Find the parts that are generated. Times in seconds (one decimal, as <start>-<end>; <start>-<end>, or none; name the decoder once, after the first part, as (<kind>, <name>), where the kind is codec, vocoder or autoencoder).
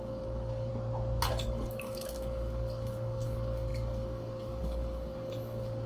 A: 0.0-0.7 (codec, DAC); 1.3-5.9